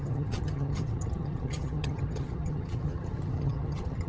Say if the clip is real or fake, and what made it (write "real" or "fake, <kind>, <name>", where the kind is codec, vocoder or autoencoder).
fake, vocoder, HiFi-GAN